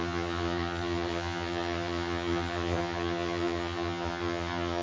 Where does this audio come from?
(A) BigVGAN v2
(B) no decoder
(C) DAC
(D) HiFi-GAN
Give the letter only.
D